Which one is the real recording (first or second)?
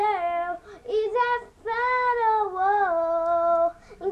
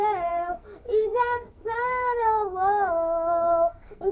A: first